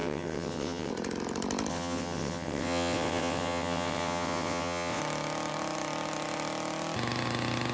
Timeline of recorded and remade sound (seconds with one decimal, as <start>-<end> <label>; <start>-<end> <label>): 0.0-0.9 remade; 0.9-1.7 recorded; 1.7-5.0 remade; 5.0-7.7 recorded